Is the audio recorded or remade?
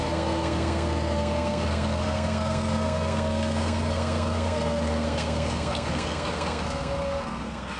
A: remade